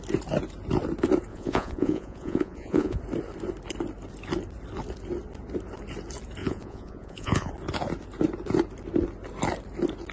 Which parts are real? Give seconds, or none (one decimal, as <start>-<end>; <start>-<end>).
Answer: 0.0-1.3; 3.0-6.4; 7.5-10.1